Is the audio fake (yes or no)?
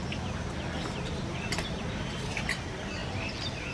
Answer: no